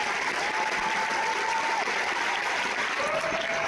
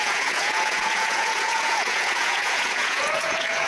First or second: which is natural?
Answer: first